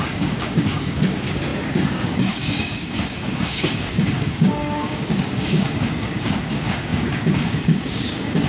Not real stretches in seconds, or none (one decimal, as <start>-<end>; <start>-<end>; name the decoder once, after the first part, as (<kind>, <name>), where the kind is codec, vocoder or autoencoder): 0.0-8.5 (codec, DAC)